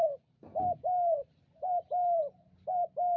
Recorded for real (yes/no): yes